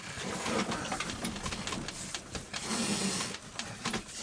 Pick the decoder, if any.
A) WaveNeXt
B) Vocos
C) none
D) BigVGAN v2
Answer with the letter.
C